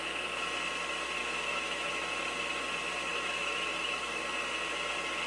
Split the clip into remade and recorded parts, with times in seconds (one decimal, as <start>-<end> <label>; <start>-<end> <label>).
0.0-1.2 recorded; 1.2-2.1 remade; 2.1-3.1 recorded; 3.1-4.2 remade; 4.2-5.3 recorded